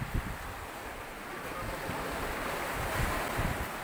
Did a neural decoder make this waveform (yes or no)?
no